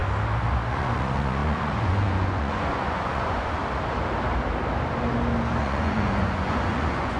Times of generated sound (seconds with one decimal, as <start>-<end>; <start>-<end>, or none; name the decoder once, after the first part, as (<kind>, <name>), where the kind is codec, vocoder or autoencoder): 0.7-3.6 (vocoder, Vocos); 5.6-7.2